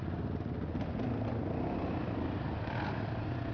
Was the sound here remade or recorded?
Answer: recorded